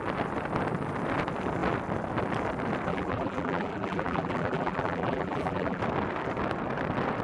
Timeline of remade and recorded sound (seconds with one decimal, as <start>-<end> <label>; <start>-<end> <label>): 0.0-2.9 recorded; 2.9-5.8 remade; 5.8-7.2 recorded

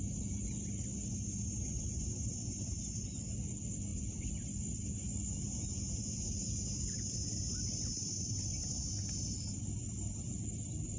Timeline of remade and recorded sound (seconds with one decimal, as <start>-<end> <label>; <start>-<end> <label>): 0.0-3.9 recorded; 3.9-8.9 remade; 8.9-11.0 recorded

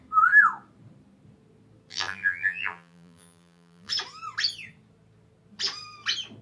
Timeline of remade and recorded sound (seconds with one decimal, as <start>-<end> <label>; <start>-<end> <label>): 0.0-1.9 recorded; 1.9-3.9 remade; 3.9-6.4 recorded

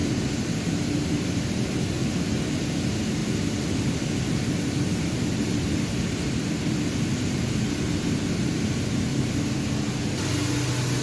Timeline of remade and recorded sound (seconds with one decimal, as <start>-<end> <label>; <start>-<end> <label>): 0.0-2.1 remade; 2.1-3.2 recorded; 3.2-6.8 remade; 6.8-11.0 recorded

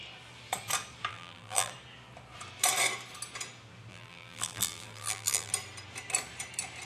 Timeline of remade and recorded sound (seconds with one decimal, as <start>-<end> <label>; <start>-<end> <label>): 0.0-1.1 recorded; 1.1-1.7 remade; 1.7-3.9 recorded; 3.9-5.5 remade; 5.5-6.8 recorded

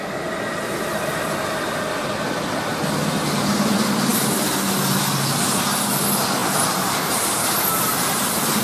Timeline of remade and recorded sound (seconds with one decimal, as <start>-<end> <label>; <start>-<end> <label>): 0.0-8.6 recorded

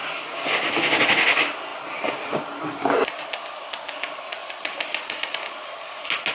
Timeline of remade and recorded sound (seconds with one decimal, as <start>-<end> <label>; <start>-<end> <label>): 0.0-1.7 recorded; 1.7-3.2 remade; 3.2-4.4 recorded; 4.4-5.3 remade; 5.3-6.3 recorded

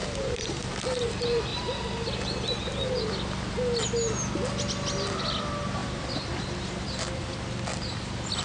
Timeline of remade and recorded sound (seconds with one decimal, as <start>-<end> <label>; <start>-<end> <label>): 0.0-0.7 remade; 0.7-5.8 recorded; 5.8-7.2 remade; 7.2-8.4 recorded